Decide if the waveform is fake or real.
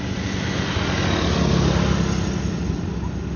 real